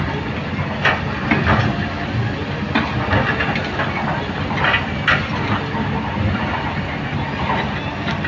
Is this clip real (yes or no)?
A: yes